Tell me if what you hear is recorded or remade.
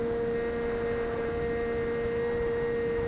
recorded